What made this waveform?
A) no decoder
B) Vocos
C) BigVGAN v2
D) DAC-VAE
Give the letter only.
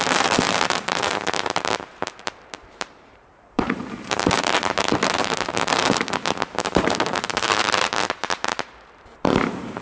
C